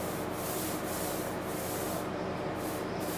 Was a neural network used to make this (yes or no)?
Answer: no